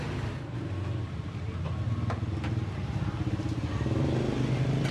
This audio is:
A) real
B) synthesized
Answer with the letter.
A